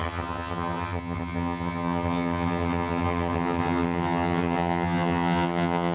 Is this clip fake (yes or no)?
yes